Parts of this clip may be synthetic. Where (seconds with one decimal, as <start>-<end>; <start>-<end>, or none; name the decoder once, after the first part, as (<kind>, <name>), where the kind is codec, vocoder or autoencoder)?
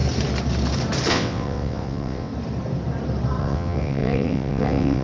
1.1-2.3 (vocoder, WaveNeXt); 3.4-5.0